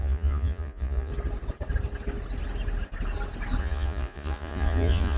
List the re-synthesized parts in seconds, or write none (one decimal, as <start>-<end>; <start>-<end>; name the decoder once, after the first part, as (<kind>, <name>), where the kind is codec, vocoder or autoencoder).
0.0-1.1 (vocoder, Vocos); 3.6-5.2